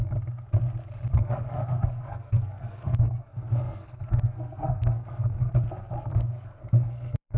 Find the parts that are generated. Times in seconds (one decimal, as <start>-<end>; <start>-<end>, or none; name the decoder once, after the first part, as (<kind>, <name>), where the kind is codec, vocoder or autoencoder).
1.1-5.5 (codec, SNAC); 6.1-7.4